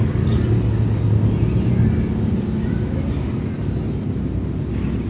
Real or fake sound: real